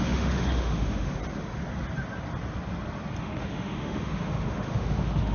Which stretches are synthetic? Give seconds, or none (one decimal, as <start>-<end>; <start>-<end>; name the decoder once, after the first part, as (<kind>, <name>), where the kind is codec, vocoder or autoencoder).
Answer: 0.0-1.2 (autoencoder, DAC-VAE); 3.2-5.3